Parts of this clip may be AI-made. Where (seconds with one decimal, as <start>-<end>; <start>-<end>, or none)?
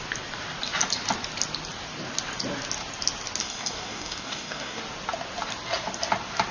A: 3.4-4.8